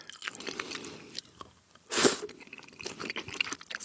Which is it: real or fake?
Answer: real